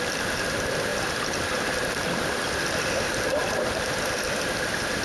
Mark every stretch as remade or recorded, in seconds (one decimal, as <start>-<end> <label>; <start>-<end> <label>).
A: 0.0-5.0 recorded